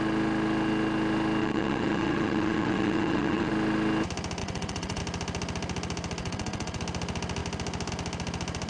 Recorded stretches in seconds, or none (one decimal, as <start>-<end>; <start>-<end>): 0.0-1.4; 3.5-4.4; 5.0-6.2; 6.8-8.7